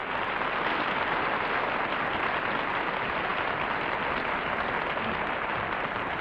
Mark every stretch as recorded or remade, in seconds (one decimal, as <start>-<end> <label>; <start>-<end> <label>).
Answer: 0.0-1.5 remade; 1.5-6.2 recorded